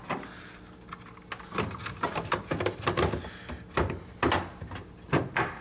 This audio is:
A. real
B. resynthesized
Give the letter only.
A